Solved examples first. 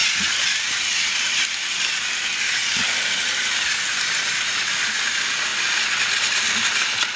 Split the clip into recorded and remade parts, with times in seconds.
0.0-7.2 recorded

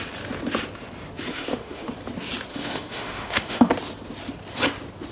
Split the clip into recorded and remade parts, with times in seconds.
0.0-1.3 recorded; 1.3-1.9 remade; 1.9-2.5 recorded; 2.5-3.7 remade; 3.7-5.1 recorded

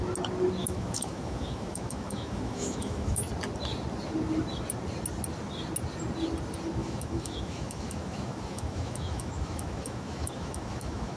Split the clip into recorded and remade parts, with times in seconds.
0.0-0.6 recorded; 0.6-3.3 remade; 3.3-6.8 recorded; 6.8-11.2 remade

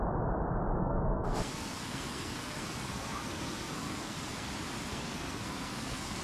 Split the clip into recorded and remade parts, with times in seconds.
0.0-0.8 recorded; 0.8-4.5 remade; 4.5-4.9 recorded; 4.9-6.2 remade

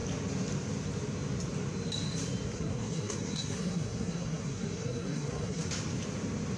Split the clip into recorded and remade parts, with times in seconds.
0.0-2.5 recorded; 2.5-5.7 remade; 5.7-6.6 recorded